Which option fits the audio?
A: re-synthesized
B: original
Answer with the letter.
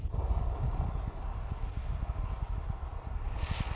B